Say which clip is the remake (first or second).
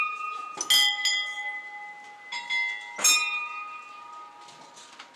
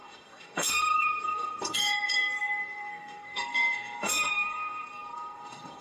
second